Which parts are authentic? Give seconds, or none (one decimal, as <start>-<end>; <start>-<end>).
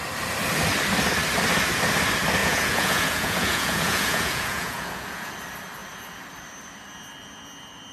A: 0.0-2.4; 5.3-7.9